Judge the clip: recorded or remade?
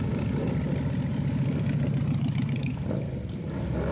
recorded